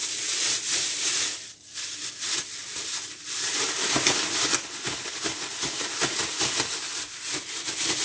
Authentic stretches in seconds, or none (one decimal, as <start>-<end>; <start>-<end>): 0.0-8.0